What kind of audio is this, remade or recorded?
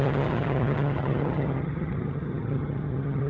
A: remade